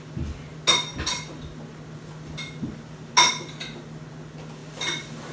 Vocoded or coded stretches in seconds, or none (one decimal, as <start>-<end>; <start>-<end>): none